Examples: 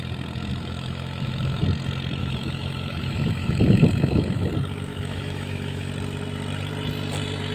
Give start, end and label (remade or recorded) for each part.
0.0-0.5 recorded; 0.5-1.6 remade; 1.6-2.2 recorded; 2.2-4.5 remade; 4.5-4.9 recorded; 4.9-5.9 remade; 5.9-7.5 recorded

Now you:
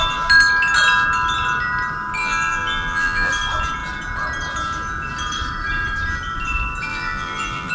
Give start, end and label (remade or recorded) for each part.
0.0-2.2 recorded; 2.2-3.3 remade; 3.3-6.9 recorded; 6.9-7.7 remade

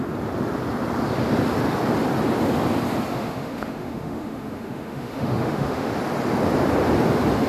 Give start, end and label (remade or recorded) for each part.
0.0-3.1 recorded; 3.1-5.9 remade; 5.9-7.5 recorded

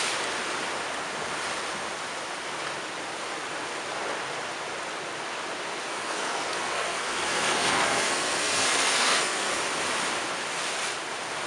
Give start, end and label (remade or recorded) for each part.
0.0-5.9 recorded; 5.9-9.6 remade; 9.6-11.5 recorded

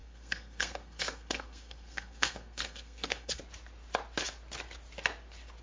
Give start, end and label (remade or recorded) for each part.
0.0-3.4 remade; 3.4-5.6 recorded